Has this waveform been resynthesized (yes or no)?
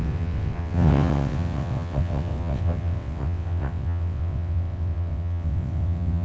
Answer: yes